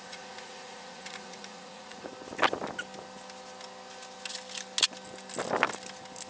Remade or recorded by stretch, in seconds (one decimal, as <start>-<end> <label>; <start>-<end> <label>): 0.0-2.1 remade; 2.1-6.3 recorded